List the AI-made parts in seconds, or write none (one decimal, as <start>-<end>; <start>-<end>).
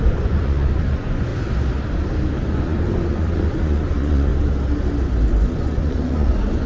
0.0-1.3; 2.5-4.3; 5.3-6.7